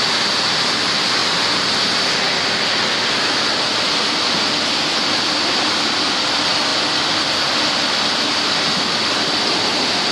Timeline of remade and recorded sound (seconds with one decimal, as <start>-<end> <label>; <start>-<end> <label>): 0.0-10.1 recorded

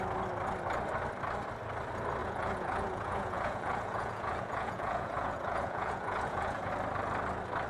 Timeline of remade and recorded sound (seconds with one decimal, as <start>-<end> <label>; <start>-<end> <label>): 0.0-2.2 recorded; 2.2-6.7 remade; 6.7-7.7 recorded

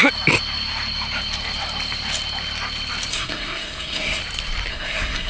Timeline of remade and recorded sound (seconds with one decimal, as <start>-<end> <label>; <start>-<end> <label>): 0.0-3.1 recorded; 3.1-4.2 remade; 4.2-4.7 recorded; 4.7-5.3 remade